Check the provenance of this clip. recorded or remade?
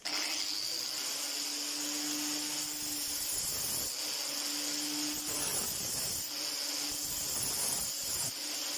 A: recorded